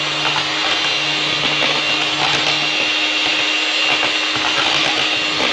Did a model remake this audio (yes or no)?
no